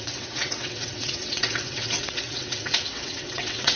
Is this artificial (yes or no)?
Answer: yes